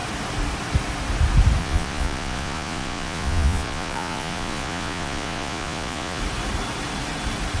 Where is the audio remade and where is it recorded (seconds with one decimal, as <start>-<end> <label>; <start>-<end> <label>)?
0.0-1.6 recorded; 1.6-6.2 remade; 6.2-7.6 recorded